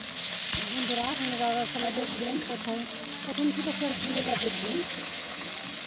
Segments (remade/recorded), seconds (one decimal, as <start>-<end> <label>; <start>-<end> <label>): 0.0-1.8 recorded; 1.8-2.5 remade; 2.5-3.9 recorded; 3.9-5.5 remade; 5.5-5.9 recorded